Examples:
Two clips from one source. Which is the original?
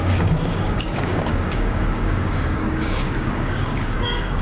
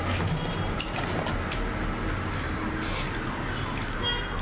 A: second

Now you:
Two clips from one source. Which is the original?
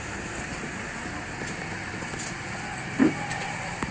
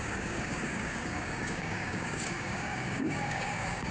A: first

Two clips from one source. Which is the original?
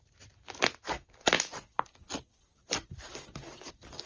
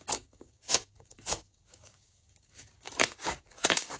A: first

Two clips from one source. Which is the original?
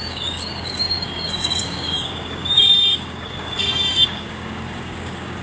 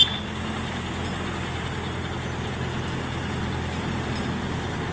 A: second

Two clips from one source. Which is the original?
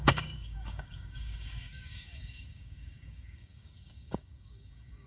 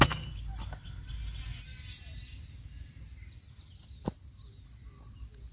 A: second